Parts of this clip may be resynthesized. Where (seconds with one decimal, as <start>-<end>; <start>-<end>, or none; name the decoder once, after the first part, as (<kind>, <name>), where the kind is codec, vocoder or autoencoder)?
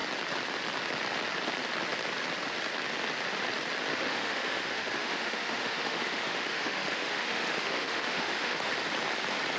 3.9-8.7 (autoencoder, DAC-VAE)